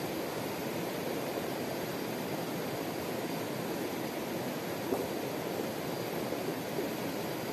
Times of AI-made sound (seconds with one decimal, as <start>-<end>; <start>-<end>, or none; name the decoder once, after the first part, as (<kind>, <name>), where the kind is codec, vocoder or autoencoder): 0.6-1.5 (vocoder, BigVGAN v2)